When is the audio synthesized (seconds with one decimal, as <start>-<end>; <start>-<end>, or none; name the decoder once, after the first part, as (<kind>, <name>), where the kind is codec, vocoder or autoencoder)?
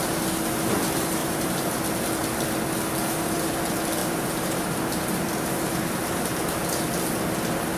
1.2-1.8 (vocoder, BigVGAN v2); 3.0-3.6; 4.0-6.8